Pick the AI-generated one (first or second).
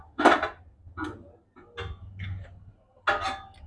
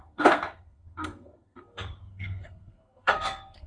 second